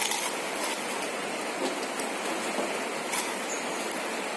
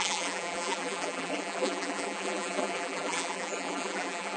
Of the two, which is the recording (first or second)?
first